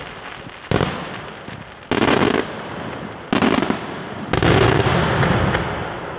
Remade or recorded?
recorded